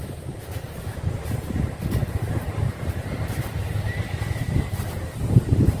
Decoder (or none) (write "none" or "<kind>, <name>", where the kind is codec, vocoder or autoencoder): vocoder, BigVGAN v2